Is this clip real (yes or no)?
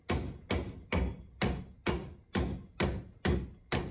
yes